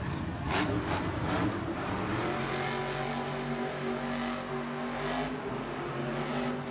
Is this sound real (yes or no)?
yes